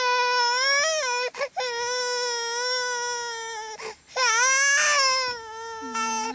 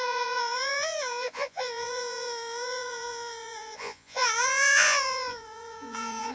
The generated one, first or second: second